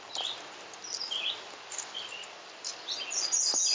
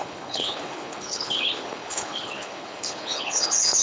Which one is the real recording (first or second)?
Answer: first